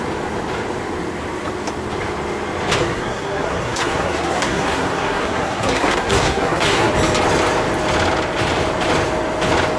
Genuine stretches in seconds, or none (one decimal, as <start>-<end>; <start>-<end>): 0.0-2.8; 6.9-9.8